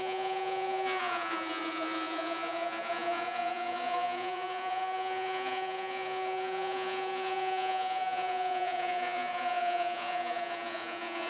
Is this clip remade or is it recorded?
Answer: remade